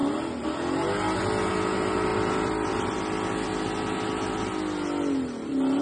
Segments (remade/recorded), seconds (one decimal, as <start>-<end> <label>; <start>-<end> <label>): 0.0-2.1 recorded; 2.1-2.7 remade; 2.7-5.8 recorded